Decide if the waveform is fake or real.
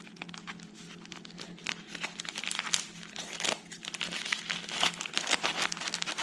real